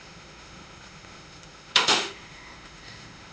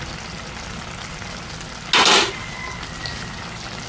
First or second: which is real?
second